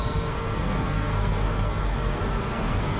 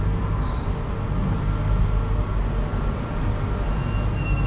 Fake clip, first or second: first